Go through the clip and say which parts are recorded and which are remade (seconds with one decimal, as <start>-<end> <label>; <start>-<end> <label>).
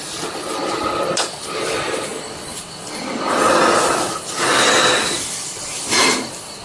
0.0-6.6 recorded